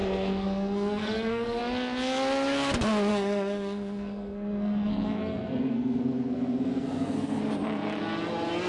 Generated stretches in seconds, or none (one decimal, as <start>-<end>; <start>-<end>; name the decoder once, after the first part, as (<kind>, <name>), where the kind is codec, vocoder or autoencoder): 0.0-1.6 (codec, SNAC); 3.1-7.4